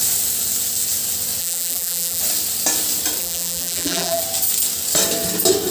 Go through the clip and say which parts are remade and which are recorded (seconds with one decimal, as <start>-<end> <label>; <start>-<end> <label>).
0.0-1.4 recorded; 1.4-2.2 remade; 2.2-3.2 recorded; 3.2-4.2 remade; 4.2-5.7 recorded